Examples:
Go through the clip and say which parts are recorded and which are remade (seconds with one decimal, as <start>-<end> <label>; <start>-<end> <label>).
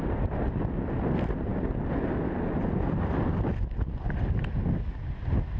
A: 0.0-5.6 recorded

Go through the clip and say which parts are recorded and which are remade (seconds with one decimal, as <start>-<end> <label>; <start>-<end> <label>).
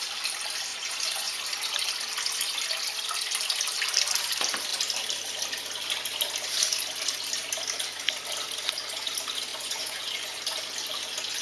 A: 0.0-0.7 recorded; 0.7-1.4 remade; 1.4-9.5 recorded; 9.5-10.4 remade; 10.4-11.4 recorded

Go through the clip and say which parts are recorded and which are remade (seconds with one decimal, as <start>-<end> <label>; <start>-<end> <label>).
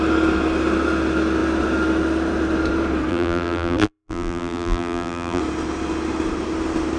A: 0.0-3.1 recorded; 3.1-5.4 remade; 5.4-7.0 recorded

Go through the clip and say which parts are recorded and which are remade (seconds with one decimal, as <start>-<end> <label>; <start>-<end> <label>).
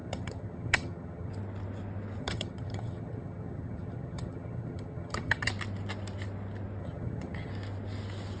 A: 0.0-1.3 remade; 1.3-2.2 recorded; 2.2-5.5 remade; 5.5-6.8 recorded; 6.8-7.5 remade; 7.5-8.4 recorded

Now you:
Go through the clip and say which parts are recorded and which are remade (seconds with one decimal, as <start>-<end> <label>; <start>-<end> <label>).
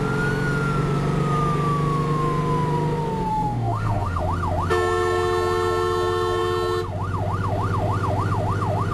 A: 0.0-3.3 recorded; 3.3-4.2 remade; 4.2-8.9 recorded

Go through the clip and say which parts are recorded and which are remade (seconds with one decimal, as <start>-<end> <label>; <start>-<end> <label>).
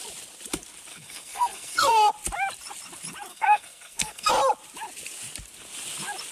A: 0.0-0.9 recorded; 0.9-2.1 remade; 2.1-3.3 recorded; 3.3-4.3 remade; 4.3-6.3 recorded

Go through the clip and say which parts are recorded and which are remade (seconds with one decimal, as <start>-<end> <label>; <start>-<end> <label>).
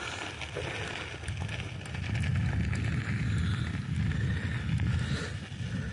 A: 0.0-5.9 recorded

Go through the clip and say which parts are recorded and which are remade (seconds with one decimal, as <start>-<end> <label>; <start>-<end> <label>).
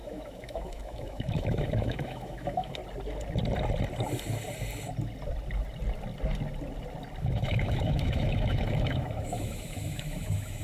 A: 0.0-2.8 remade; 2.8-7.2 recorded; 7.2-10.6 remade